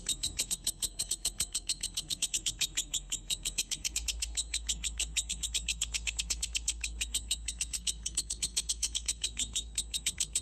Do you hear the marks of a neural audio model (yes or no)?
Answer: yes